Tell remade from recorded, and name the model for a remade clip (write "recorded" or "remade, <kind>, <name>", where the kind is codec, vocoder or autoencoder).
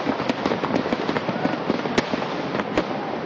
recorded